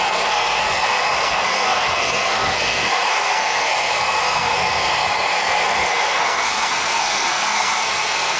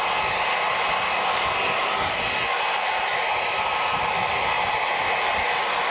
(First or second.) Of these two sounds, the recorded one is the second